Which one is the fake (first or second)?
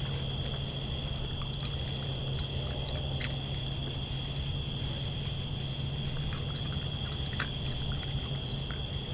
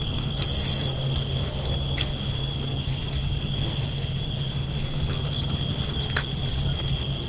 second